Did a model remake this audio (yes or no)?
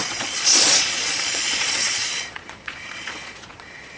yes